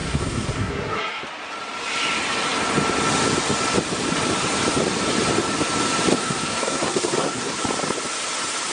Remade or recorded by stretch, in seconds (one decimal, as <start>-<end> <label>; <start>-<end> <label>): 0.0-1.2 remade; 1.2-6.1 recorded; 6.1-7.6 remade; 7.6-8.7 recorded